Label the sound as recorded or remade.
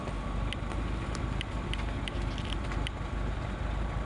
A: recorded